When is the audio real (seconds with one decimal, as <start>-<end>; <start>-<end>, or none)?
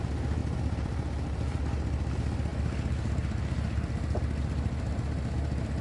0.0-0.4; 1.6-5.8